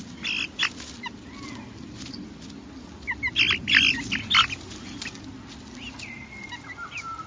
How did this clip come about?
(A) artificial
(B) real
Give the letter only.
B